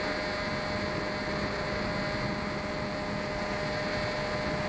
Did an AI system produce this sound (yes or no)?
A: no